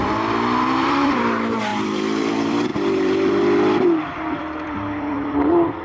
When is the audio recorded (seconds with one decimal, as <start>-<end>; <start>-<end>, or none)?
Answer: none